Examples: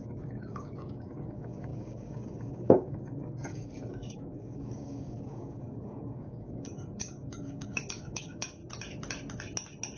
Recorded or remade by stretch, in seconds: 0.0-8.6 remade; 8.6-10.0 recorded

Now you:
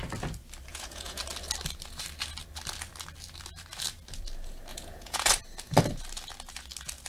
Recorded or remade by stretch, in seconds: 0.0-0.7 recorded; 0.7-1.2 remade; 1.2-4.7 recorded; 4.7-5.3 remade; 5.3-7.1 recorded

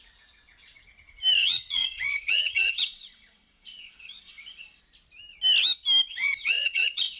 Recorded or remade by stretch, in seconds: 0.0-1.4 recorded; 1.4-4.8 remade; 4.8-6.1 recorded; 6.1-7.2 remade